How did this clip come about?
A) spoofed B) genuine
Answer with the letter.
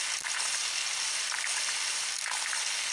B